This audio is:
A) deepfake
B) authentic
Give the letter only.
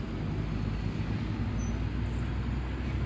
B